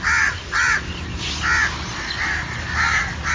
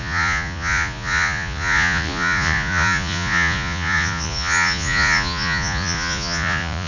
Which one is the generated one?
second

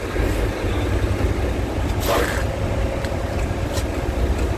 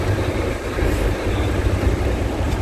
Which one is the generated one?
second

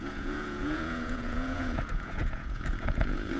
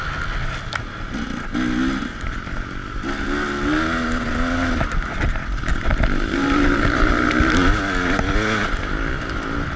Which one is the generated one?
first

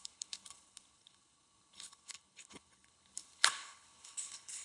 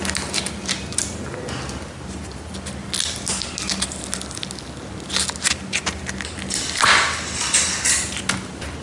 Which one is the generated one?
first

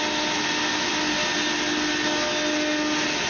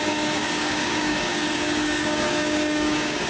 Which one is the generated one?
second